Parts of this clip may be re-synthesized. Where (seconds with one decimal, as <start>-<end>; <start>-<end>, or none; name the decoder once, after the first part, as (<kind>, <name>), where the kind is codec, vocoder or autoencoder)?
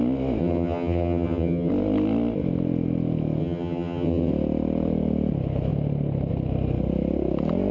0.4-1.7 (vocoder, HiFi-GAN); 3.4-4.3